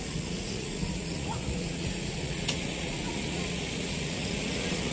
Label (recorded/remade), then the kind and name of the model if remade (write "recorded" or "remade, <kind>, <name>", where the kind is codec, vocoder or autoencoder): remade, vocoder, Vocos